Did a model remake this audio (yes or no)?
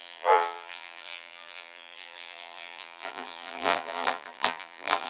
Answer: yes